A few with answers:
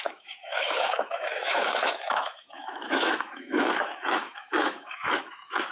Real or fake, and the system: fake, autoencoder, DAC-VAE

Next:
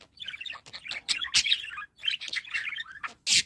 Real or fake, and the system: real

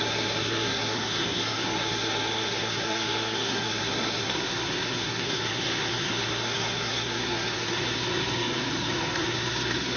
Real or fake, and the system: fake, codec, SNAC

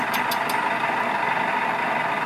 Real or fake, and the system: real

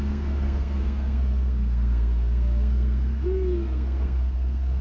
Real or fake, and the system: fake, codec, SNAC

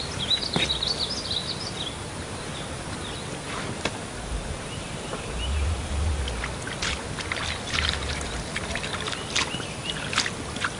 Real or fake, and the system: real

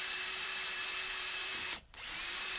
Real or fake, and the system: fake, vocoder, BigVGAN v2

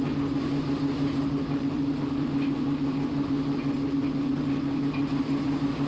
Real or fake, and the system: real